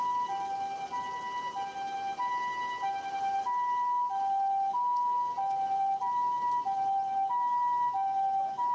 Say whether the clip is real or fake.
real